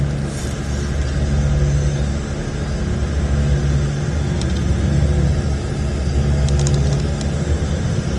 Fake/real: real